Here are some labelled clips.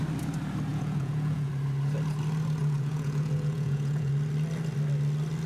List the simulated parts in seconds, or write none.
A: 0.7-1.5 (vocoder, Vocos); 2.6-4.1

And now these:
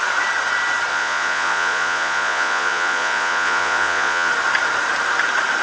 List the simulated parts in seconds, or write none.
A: 0.9-4.3 (vocoder, Vocos)